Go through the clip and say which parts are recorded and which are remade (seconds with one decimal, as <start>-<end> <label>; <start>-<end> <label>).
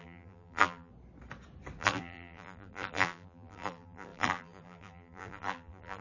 0.0-0.9 remade; 0.9-1.8 recorded; 1.8-6.0 remade